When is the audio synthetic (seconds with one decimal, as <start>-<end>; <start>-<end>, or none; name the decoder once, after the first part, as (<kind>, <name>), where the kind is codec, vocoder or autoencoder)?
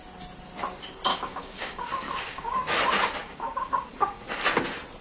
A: 1.1-2.8 (codec, DAC); 3.2-4.4